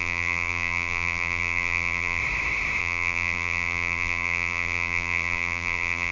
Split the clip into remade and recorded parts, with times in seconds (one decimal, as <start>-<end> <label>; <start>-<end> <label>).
0.0-2.2 remade; 2.2-2.8 recorded; 2.8-6.1 remade